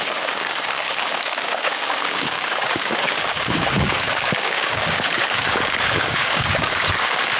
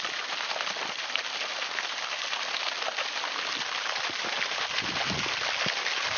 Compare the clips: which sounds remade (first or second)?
first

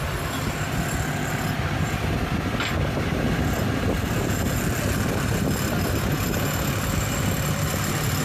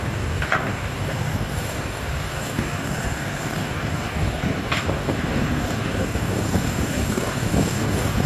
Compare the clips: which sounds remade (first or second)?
second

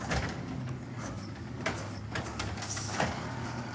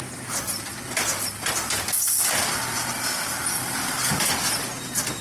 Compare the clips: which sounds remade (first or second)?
first